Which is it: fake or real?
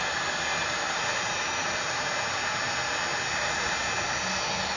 real